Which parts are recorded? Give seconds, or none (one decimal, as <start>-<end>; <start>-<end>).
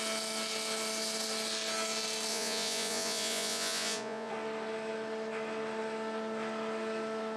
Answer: 0.0-2.3; 4.3-7.4